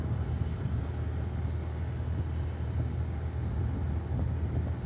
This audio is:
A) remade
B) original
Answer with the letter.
B